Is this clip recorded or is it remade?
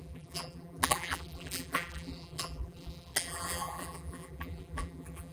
remade